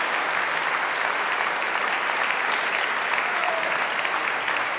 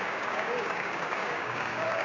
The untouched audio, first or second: first